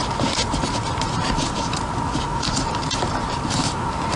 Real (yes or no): yes